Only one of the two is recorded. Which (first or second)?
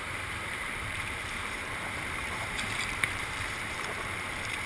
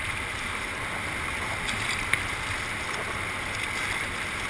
second